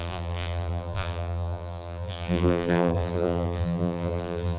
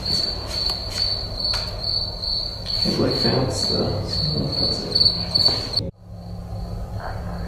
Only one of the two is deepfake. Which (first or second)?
first